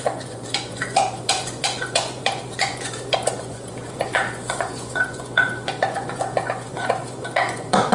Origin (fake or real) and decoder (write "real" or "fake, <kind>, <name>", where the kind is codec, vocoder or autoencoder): fake, vocoder, Vocos